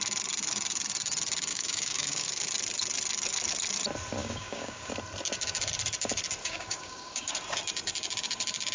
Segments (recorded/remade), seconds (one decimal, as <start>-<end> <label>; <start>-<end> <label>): 0.0-1.5 recorded; 1.5-2.3 remade; 2.3-4.2 recorded; 4.2-4.9 remade; 4.9-6.4 recorded; 6.4-7.3 remade; 7.3-8.7 recorded